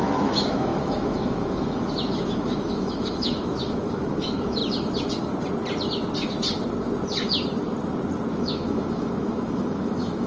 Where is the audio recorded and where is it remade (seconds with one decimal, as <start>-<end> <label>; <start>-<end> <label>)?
0.0-4.6 remade; 4.6-8.3 recorded; 8.3-10.3 remade